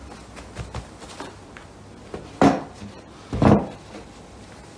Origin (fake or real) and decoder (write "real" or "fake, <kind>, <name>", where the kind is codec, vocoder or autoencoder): real